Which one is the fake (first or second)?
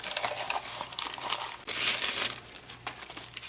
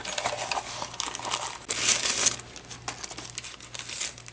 first